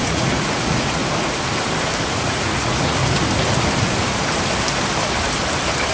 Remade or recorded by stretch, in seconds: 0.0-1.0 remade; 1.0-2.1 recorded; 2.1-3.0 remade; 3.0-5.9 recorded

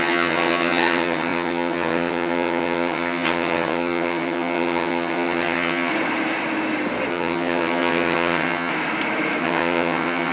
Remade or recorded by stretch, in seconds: 0.0-5.9 remade; 5.9-7.1 recorded; 7.1-8.7 remade; 8.7-9.4 recorded; 9.4-10.3 remade

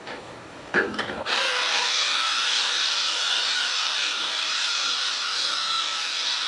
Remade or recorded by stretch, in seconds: 0.0-6.5 remade

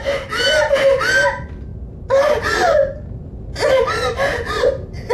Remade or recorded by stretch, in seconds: 0.0-4.3 recorded; 4.3-5.1 remade

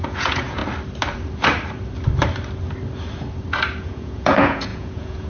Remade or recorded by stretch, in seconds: 0.0-0.6 remade; 0.6-3.8 recorded; 3.8-5.3 remade